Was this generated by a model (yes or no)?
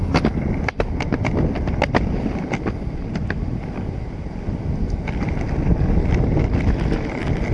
no